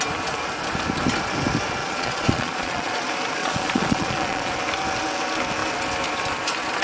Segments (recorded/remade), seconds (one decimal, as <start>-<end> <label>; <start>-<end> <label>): 0.0-1.8 recorded; 1.8-3.0 remade; 3.0-3.4 recorded; 3.4-4.5 remade; 4.5-6.8 recorded